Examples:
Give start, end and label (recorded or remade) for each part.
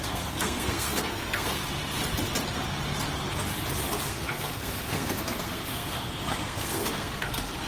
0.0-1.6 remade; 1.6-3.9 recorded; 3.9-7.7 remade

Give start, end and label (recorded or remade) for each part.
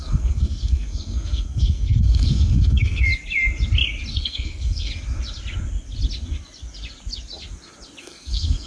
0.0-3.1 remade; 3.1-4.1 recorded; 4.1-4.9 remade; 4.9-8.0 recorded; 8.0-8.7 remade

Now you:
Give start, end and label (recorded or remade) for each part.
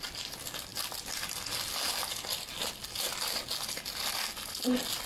0.0-5.1 recorded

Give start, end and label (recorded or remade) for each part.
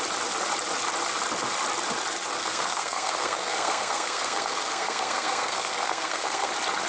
0.0-2.4 recorded; 2.4-6.5 remade; 6.5-6.9 recorded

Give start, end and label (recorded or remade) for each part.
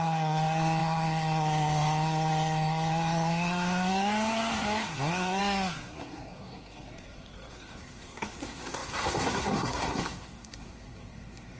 0.0-11.6 remade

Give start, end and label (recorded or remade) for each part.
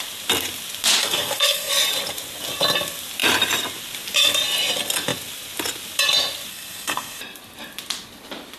0.0-1.0 recorded; 1.0-1.7 remade; 1.7-6.5 recorded; 6.5-7.2 remade; 7.2-8.6 recorded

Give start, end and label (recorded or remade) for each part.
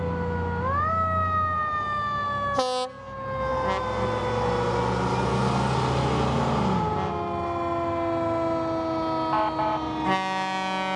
0.0-11.0 recorded